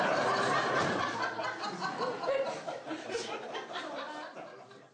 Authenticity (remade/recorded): recorded